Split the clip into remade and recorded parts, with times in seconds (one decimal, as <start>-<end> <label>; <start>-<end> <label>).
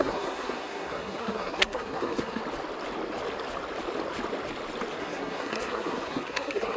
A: 0.0-2.4 remade; 2.4-5.0 recorded; 5.0-6.8 remade